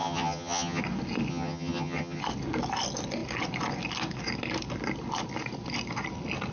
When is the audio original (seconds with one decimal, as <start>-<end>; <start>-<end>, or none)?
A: 0.8-1.3; 2.2-6.5